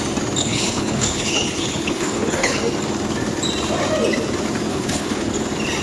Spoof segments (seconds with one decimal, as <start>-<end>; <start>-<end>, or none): 0.4-2.6; 4.7-5.3